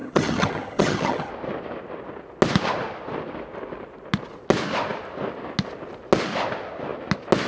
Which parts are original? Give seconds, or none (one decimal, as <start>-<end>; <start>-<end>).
1.3-7.5